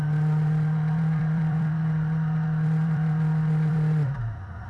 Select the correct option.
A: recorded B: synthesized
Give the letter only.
B